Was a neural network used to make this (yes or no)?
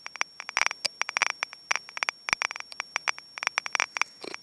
no